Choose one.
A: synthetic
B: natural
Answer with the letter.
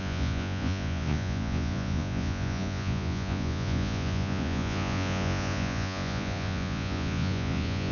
A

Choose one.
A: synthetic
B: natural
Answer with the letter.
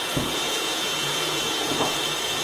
A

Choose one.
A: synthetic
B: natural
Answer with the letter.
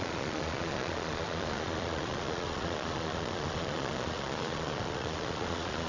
A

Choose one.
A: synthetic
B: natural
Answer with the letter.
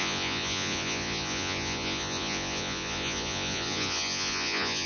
A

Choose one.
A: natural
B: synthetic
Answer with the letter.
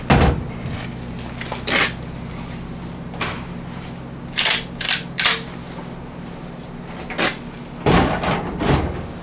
A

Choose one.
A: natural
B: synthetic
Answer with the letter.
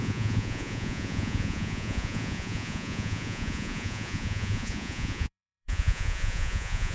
B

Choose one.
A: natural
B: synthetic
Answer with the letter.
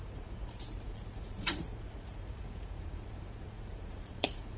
B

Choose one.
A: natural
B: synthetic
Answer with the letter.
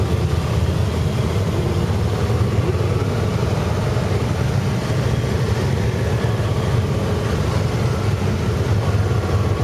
A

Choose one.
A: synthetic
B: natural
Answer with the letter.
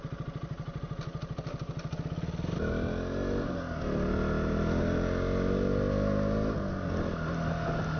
B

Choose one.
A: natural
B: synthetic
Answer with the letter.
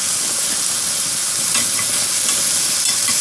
A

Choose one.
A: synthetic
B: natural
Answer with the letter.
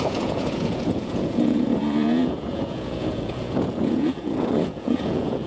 A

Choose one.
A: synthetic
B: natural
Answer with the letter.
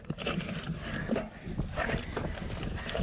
B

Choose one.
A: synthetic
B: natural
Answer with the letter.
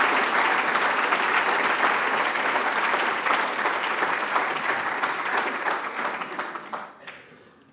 B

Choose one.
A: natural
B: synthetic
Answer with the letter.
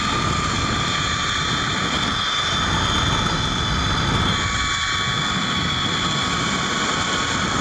A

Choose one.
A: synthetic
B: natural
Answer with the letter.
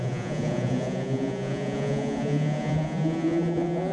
A